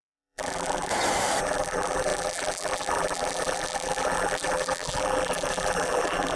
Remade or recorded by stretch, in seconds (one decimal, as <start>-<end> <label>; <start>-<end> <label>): 0.0-0.9 remade; 0.9-1.4 recorded; 1.4-6.4 remade